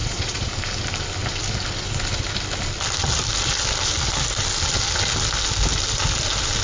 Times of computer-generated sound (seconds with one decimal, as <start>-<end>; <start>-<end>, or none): 0.0-0.5